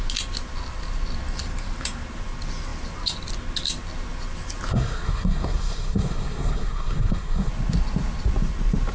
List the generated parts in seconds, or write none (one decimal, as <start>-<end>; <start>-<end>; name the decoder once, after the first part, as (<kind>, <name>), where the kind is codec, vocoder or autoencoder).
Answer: 4.7-7.5 (codec, SNAC)

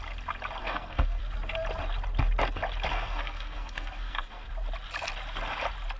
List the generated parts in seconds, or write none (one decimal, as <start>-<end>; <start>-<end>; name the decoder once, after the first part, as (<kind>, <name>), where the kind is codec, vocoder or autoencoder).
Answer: 0.6-1.2 (codec, SNAC); 2.9-4.5

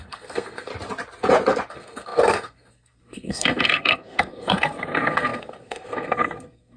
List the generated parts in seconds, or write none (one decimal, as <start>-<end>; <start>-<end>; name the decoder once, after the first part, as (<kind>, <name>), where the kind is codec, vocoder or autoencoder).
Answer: 0.0-0.7 (codec, SNAC); 1.7-6.8

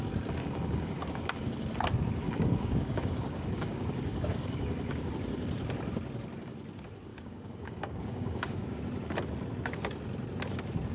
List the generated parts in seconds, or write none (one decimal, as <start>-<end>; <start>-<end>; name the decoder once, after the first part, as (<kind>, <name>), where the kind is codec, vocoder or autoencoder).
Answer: 0.4-1.5 (codec, DAC); 2.2-5.1; 7.1-8.8

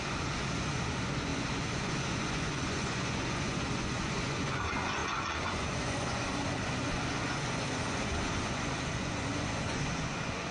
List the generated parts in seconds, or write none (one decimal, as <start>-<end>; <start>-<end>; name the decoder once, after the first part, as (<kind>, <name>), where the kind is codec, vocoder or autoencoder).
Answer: 0.0-10.5 (vocoder, Vocos)

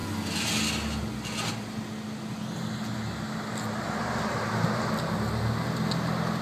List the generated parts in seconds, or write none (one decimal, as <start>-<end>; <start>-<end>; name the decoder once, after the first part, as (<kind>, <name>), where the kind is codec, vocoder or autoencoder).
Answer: none

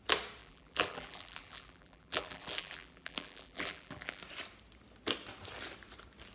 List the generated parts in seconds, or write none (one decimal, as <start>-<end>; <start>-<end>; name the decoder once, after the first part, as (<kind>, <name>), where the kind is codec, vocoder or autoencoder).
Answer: 0.4-4.2 (vocoder, BigVGAN v2)